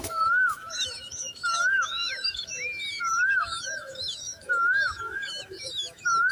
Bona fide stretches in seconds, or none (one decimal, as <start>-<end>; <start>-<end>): none